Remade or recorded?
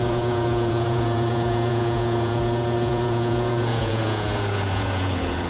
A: remade